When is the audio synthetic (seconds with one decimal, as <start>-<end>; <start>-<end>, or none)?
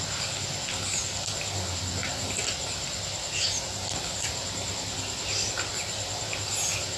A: none